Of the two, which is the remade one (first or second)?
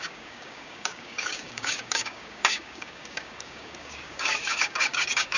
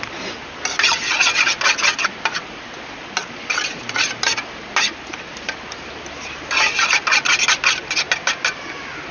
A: first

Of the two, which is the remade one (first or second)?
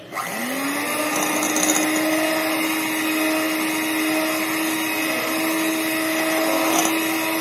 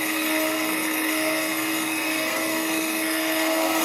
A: second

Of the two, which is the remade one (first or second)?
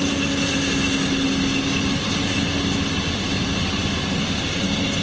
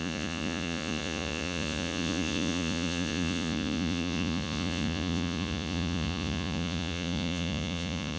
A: second